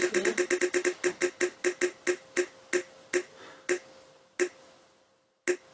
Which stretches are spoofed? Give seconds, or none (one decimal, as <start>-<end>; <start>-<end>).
none